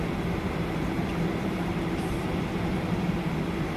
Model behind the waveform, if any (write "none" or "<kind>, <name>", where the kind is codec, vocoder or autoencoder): vocoder, BigVGAN v2